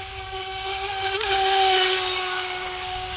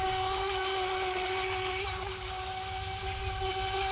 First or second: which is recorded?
second